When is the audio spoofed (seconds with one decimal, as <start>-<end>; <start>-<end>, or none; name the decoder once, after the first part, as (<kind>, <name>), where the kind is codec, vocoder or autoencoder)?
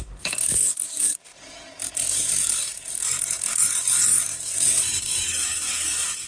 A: 0.0-6.3 (codec, DAC)